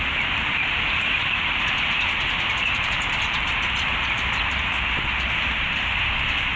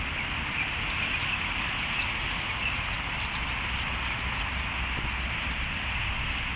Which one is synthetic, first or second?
first